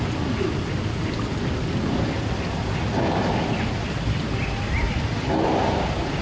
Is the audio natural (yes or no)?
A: yes